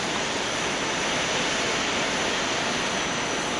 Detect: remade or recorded recorded